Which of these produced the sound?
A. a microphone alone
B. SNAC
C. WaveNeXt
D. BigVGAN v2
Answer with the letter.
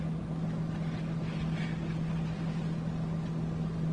A